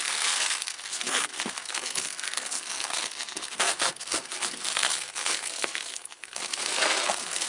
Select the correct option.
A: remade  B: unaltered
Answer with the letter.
A